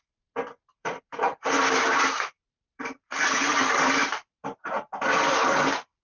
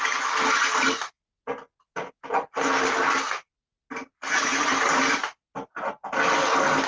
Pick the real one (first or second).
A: second